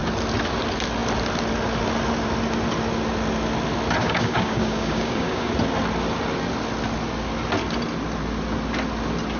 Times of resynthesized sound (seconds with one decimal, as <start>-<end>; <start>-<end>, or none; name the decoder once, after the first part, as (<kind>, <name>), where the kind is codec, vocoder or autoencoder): 4.0-5.5 (codec, DAC)